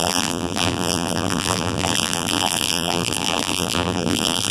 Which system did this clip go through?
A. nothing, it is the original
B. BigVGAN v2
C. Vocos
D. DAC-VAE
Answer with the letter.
B